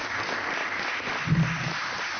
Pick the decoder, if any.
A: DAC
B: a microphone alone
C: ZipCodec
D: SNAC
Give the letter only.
B